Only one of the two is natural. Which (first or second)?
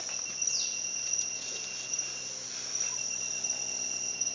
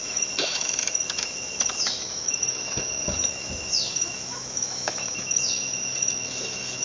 first